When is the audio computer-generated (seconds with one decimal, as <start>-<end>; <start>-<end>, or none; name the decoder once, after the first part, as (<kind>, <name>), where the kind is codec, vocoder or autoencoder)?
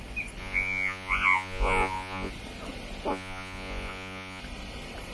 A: 0.4-2.3 (vocoder, Vocos); 3.1-4.4